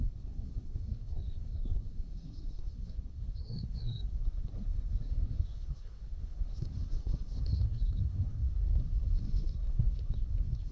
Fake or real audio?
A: fake